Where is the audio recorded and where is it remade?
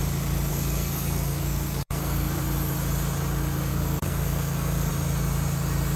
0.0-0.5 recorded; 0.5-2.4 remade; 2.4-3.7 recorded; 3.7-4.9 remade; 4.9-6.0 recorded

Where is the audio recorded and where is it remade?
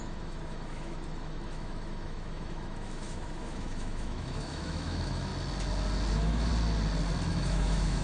0.0-5.3 remade; 5.3-6.1 recorded; 6.1-6.5 remade; 6.5-7.3 recorded; 7.3-8.0 remade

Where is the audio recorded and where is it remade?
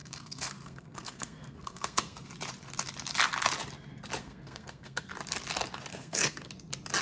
0.0-2.3 remade; 2.3-4.2 recorded; 4.2-5.1 remade; 5.1-5.9 recorded; 5.9-6.5 remade; 6.5-7.0 recorded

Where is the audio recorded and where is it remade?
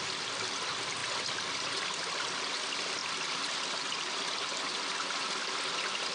0.0-6.1 recorded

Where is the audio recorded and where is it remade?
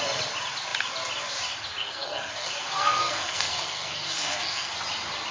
0.0-1.8 recorded; 1.8-4.7 remade; 4.7-5.3 recorded